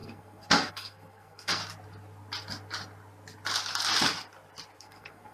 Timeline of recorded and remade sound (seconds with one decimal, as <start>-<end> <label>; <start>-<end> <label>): 0.0-1.6 remade; 1.6-4.8 recorded; 4.8-5.3 remade